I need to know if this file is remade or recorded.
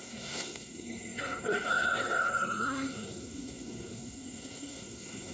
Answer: remade